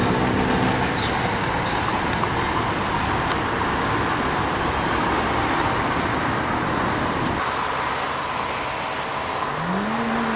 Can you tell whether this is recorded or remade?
recorded